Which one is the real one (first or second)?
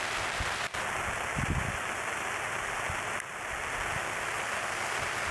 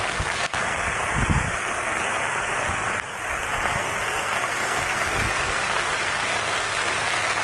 first